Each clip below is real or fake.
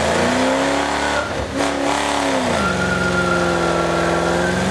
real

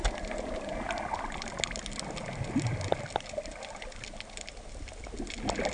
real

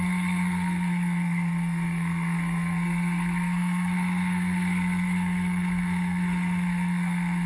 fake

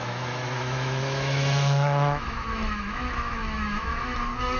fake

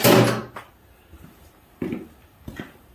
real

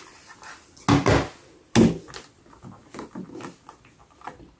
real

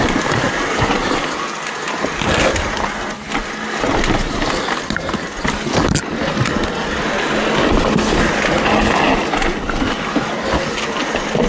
real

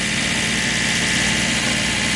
real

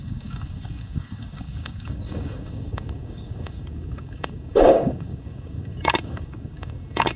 fake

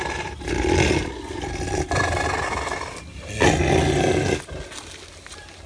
real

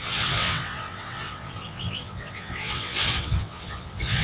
fake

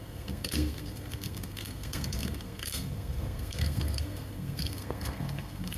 fake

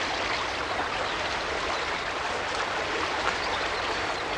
real